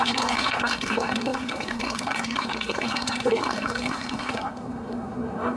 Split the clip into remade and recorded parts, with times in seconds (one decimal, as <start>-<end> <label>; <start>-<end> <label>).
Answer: 0.0-5.6 remade